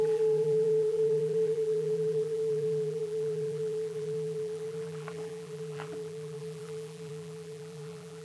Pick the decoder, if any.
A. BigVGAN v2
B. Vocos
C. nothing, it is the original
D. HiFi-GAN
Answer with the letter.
A